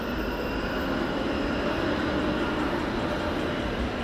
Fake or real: real